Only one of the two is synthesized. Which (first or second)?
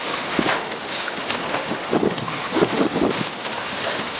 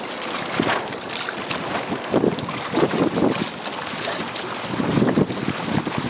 first